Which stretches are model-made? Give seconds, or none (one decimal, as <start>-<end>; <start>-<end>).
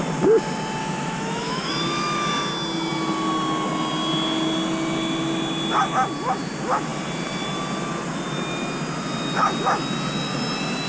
0.8-1.7